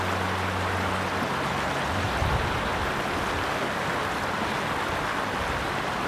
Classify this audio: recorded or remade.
recorded